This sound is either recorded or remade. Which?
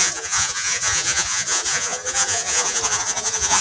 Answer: remade